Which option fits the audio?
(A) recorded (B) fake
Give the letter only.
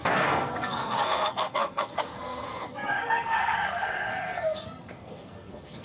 B